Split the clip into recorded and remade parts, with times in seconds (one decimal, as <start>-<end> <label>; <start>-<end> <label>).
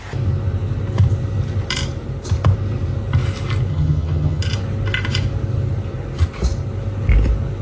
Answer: 0.0-3.7 recorded; 3.7-4.4 remade; 4.4-7.6 recorded